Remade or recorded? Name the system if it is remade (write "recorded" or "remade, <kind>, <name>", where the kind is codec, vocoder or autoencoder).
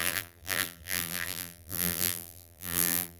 remade, vocoder, BigVGAN v2